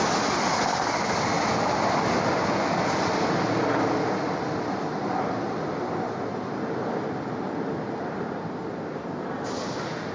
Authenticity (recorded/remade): recorded